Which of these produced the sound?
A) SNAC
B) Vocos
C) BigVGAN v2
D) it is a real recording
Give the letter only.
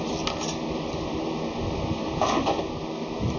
D